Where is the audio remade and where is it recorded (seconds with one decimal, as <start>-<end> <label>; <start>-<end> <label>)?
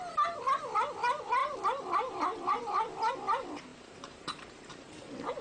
0.0-1.4 recorded; 1.4-3.1 remade; 3.1-3.7 recorded; 3.7-4.5 remade; 4.5-5.4 recorded